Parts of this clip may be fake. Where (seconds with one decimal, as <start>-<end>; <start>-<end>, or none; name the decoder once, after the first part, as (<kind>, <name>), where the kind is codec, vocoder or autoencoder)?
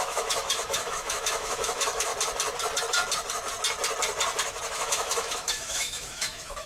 0.0-2.1 (autoencoder, DAC-VAE); 4.7-6.7